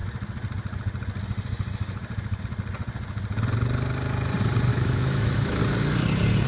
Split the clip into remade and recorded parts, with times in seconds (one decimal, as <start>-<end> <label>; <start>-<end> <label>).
0.0-4.7 recorded; 4.7-5.6 remade; 5.6-6.5 recorded